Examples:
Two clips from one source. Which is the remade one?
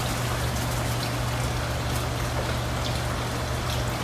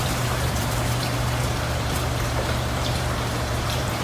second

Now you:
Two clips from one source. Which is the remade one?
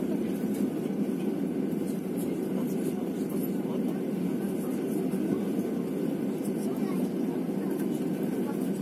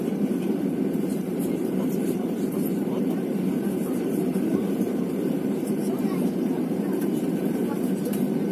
second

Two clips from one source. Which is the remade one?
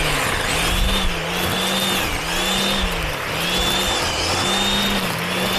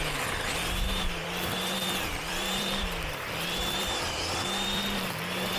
second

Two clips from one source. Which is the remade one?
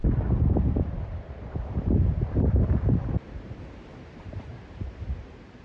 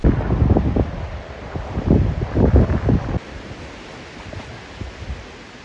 first